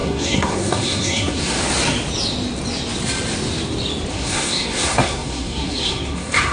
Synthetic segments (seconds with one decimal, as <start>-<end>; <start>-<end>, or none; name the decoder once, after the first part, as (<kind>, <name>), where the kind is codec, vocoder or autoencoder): 0.0-1.6 (codec, SNAC); 4.1-6.5